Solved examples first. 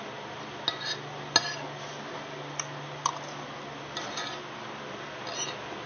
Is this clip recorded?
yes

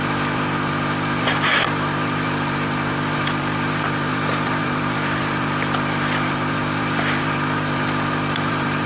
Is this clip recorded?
no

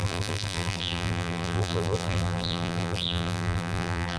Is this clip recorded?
no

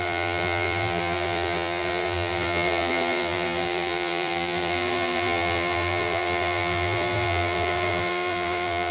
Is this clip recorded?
no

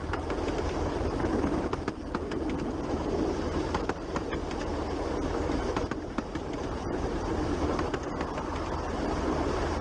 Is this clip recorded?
yes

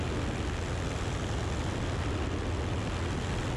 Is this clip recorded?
yes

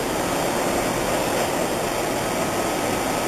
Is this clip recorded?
yes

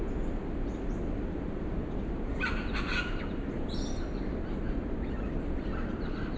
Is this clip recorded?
yes